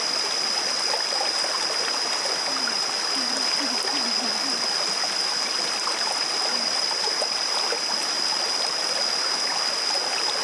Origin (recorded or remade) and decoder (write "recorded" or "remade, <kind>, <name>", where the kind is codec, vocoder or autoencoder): recorded